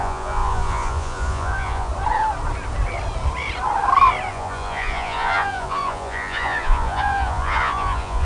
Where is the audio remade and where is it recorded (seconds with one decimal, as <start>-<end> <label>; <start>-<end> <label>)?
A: 0.0-1.9 remade; 1.9-4.3 recorded; 4.3-8.2 remade